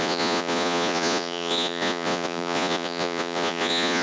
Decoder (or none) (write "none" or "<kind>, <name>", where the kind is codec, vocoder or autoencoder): vocoder, Vocos